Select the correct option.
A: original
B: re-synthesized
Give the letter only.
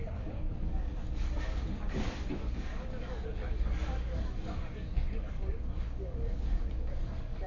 B